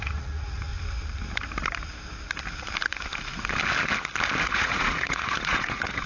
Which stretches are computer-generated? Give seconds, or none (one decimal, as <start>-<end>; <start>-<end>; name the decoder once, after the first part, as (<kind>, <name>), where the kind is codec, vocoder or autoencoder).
0.0-0.7 (vocoder, Vocos); 4.4-6.1